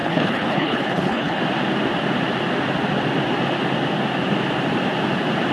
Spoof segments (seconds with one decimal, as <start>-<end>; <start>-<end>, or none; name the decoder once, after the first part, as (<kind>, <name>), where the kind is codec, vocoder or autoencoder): 0.0-1.4 (codec, HILCodec)